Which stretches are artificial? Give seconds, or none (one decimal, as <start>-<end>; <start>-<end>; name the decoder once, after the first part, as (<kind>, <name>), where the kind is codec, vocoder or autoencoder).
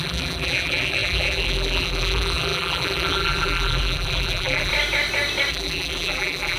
0.0-4.7 (vocoder, BigVGAN v2); 5.5-6.6